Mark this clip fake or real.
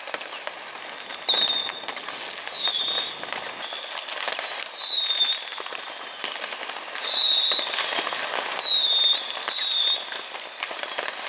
real